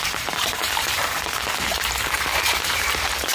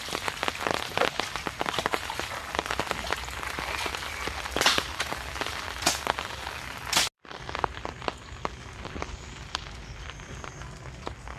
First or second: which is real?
second